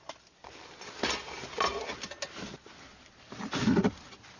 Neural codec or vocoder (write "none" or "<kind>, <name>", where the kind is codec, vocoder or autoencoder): none